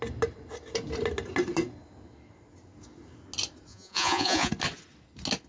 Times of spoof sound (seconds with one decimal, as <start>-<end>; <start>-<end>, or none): 3.7-4.5